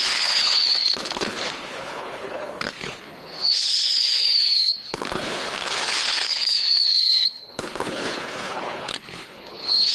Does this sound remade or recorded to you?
remade